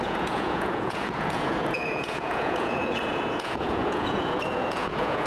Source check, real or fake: fake